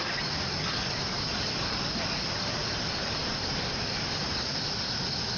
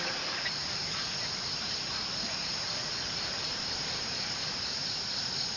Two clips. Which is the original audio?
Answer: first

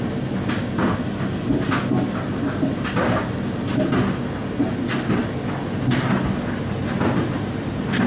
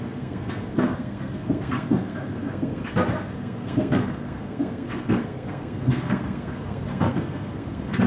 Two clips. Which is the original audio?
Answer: first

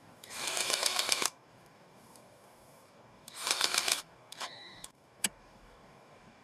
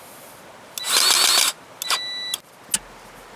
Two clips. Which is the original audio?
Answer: second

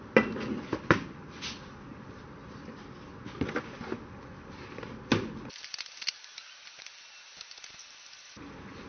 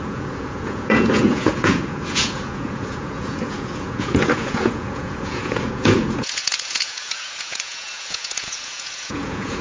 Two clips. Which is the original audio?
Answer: first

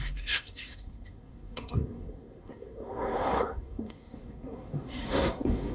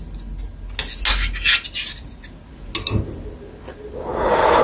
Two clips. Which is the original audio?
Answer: second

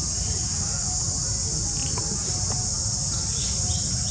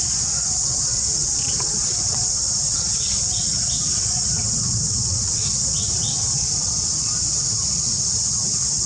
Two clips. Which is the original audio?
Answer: first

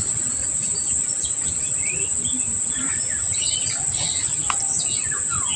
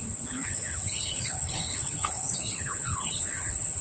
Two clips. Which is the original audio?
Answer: first